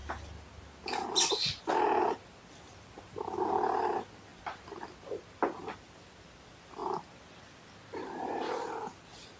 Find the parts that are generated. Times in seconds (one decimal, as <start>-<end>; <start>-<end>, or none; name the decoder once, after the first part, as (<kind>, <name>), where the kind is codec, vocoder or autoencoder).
none